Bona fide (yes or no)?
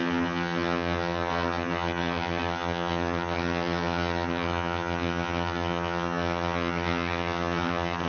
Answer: no